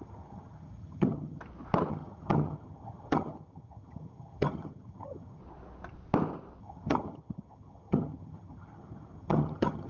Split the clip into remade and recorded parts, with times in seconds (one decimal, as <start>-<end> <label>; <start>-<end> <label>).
0.0-1.4 remade; 1.4-1.9 recorded; 1.9-5.4 remade; 5.4-6.6 recorded; 6.6-9.9 remade